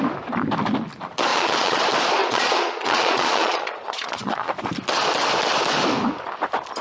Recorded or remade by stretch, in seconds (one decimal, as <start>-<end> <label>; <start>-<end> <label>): 0.0-1.3 recorded; 1.3-1.8 remade; 1.8-2.2 recorded; 2.2-4.5 remade; 4.5-6.8 recorded